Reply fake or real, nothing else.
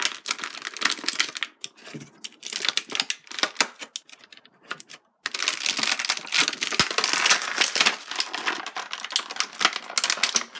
real